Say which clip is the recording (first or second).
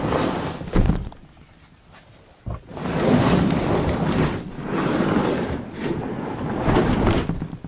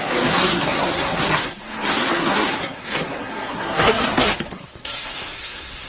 first